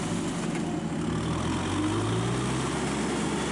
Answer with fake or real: real